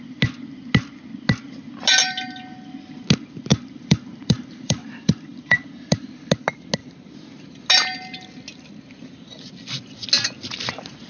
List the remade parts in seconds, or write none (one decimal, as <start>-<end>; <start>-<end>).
3.5-5.7